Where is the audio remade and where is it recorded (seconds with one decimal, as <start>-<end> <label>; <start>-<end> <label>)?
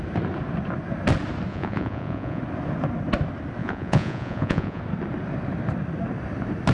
0.0-1.5 recorded; 1.5-2.4 remade; 2.4-3.6 recorded; 3.6-4.8 remade; 4.8-6.7 recorded